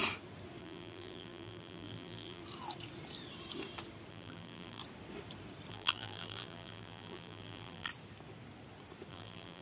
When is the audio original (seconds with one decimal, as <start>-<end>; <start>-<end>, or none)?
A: 0.0-0.6; 2.4-4.1; 4.8-5.7; 7.9-9.1